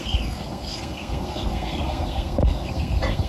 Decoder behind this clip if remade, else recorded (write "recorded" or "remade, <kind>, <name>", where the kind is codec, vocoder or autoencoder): remade, codec, SNAC